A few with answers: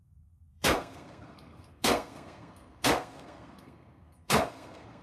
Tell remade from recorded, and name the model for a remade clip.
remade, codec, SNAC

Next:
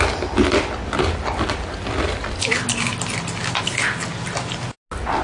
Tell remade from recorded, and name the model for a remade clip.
recorded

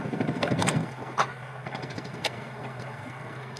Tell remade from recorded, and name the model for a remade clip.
remade, codec, SNAC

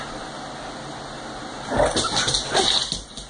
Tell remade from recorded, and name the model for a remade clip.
recorded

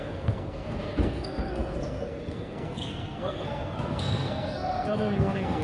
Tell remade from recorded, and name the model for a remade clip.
remade, codec, SNAC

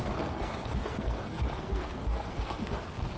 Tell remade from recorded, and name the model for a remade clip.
remade, codec, SNAC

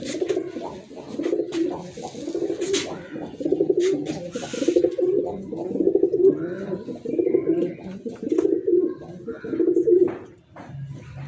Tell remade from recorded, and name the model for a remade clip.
recorded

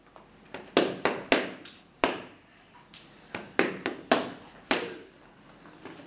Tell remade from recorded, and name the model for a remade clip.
recorded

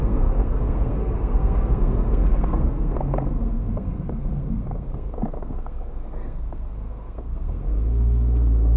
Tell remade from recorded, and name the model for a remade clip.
remade, codec, SNAC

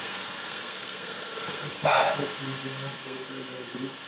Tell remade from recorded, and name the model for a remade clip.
remade, codec, SNAC